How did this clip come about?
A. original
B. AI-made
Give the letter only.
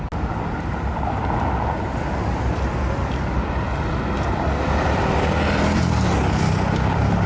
A